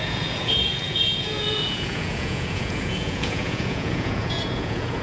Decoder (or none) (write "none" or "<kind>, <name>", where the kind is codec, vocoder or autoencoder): vocoder, Vocos